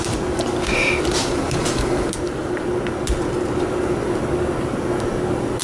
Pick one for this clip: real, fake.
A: real